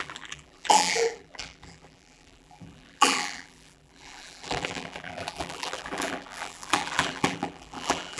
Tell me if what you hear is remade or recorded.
remade